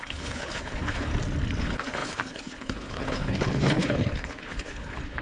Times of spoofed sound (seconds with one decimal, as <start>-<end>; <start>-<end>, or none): 0.0-1.1; 1.6-5.2